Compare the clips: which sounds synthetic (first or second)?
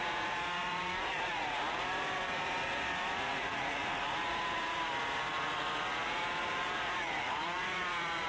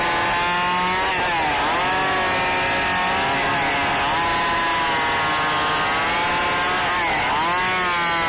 first